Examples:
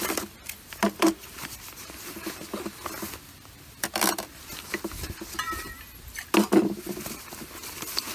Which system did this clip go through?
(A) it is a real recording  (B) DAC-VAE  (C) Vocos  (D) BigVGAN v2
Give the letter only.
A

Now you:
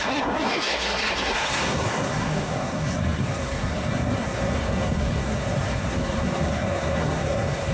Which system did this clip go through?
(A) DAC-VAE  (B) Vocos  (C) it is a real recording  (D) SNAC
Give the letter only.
D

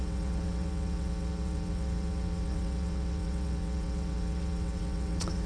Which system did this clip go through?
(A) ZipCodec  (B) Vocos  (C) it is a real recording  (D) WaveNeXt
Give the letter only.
D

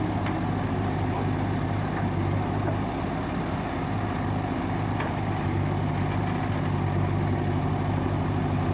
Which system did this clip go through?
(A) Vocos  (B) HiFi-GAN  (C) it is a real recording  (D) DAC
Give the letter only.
C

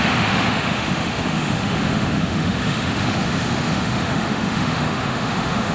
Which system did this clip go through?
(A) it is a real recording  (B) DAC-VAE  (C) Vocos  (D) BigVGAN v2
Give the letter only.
B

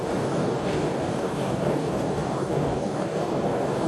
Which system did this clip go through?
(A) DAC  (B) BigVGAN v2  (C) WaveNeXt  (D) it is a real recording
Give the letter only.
A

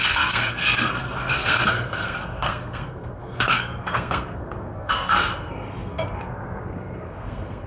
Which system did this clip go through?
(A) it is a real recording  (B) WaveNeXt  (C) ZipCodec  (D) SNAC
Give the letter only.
D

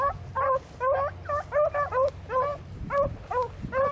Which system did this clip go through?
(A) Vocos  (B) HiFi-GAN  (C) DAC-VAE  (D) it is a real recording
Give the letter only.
D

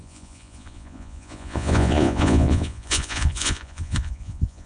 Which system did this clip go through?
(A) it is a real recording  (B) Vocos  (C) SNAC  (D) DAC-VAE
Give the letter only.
B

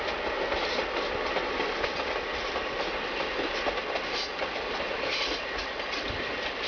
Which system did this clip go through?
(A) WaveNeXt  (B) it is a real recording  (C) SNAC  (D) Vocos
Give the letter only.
B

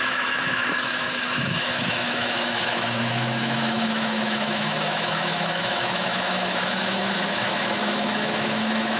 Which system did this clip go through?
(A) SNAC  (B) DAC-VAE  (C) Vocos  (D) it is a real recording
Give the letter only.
B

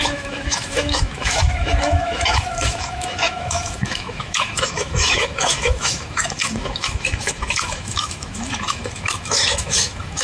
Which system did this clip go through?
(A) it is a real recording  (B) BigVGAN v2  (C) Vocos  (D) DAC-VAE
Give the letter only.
D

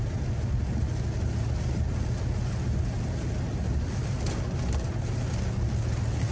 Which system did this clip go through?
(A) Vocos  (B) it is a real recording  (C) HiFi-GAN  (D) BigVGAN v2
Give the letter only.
B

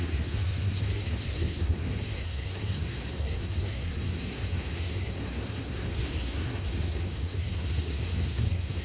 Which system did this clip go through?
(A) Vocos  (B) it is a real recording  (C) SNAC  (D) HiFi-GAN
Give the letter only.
C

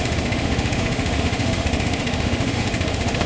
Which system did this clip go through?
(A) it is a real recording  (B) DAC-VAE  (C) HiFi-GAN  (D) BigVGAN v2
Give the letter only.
B